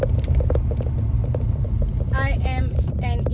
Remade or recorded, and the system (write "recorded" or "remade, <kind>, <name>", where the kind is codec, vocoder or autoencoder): recorded